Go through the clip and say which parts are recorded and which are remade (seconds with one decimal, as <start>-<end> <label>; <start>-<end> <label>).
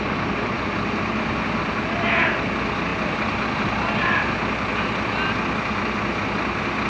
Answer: 0.0-6.9 recorded